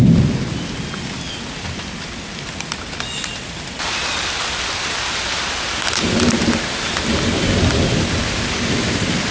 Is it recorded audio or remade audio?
recorded